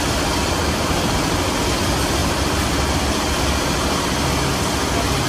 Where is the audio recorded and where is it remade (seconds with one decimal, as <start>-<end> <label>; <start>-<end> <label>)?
0.0-2.2 recorded; 2.2-3.4 remade; 3.4-5.3 recorded